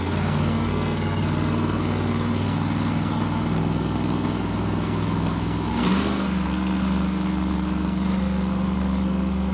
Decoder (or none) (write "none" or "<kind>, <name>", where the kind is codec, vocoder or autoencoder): codec, SNAC